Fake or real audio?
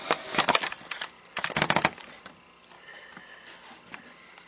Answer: real